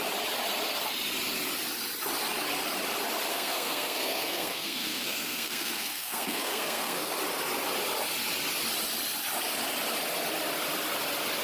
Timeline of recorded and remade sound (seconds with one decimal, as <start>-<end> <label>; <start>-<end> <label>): 0.0-3.3 recorded; 3.3-7.1 remade; 7.1-11.4 recorded